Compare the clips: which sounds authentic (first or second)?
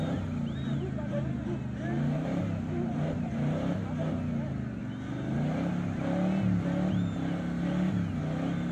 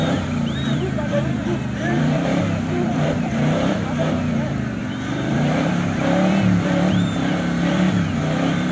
first